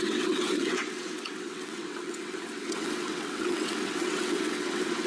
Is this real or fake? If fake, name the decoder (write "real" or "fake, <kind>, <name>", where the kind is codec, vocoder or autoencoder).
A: fake, vocoder, WaveNeXt